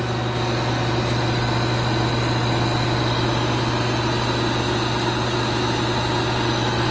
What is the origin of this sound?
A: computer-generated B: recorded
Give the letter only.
B